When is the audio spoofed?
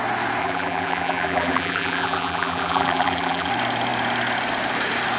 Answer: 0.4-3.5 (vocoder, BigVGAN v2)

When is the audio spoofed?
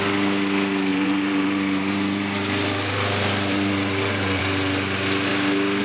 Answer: 0.9-4.4 (vocoder, BigVGAN v2)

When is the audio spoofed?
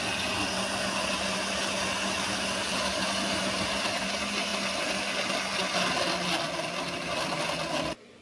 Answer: 2.7-4.1 (vocoder, BigVGAN v2)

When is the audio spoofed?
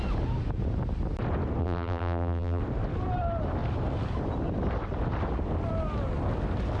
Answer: 1.6-2.6 (vocoder, BigVGAN v2)